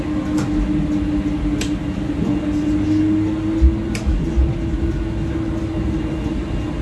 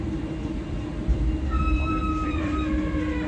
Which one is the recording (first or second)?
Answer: first